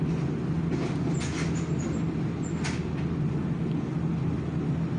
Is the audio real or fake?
real